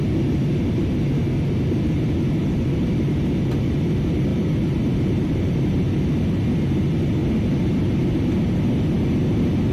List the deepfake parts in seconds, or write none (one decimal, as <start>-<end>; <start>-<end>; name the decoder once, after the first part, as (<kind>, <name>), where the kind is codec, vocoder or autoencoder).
4.3-6.0 (vocoder, BigVGAN v2)